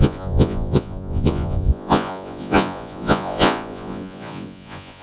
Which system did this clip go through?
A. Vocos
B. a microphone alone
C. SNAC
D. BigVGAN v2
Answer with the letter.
A